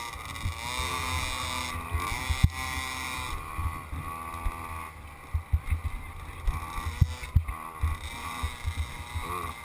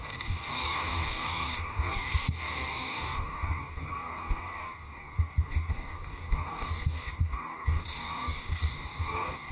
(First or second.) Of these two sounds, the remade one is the second